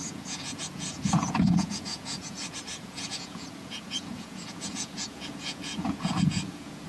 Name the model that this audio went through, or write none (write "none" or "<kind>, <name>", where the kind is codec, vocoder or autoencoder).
vocoder, Vocos